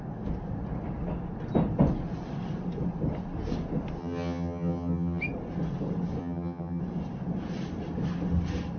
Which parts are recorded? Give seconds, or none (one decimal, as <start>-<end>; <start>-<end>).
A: 0.0-4.0; 5.2-6.2; 6.8-8.8